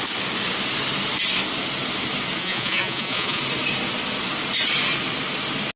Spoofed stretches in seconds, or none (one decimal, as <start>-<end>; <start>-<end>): 2.4-3.4